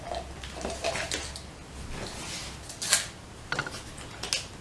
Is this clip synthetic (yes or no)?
no